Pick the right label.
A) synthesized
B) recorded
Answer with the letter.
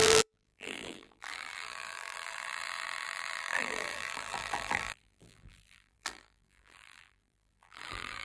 A